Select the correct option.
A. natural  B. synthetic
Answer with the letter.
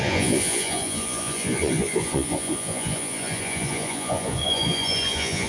B